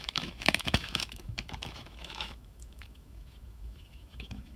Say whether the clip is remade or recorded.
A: remade